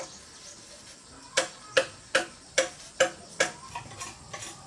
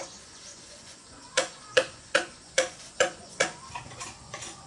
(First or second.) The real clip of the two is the first